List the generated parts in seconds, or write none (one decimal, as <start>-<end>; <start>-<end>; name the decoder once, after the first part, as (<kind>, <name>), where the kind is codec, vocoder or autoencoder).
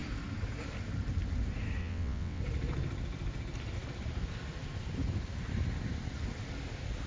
1.8-2.4 (vocoder, WaveNeXt)